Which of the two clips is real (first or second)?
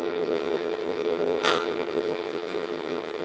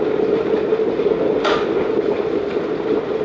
second